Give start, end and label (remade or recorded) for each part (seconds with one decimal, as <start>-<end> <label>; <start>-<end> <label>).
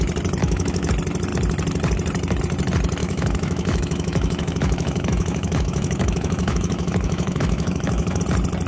0.0-0.4 recorded; 0.4-0.9 remade; 0.9-3.0 recorded; 3.0-8.2 remade; 8.2-8.7 recorded